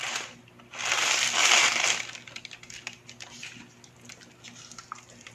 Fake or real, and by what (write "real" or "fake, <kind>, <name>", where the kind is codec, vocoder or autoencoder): real